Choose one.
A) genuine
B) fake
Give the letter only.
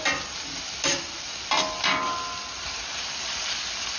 A